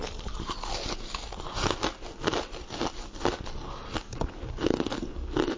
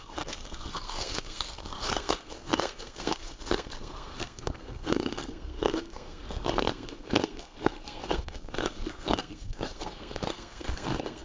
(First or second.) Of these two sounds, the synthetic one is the second